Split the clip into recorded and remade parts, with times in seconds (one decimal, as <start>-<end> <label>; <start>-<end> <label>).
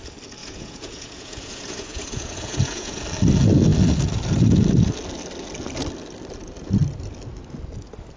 0.0-0.4 recorded; 0.4-3.0 remade; 3.0-8.2 recorded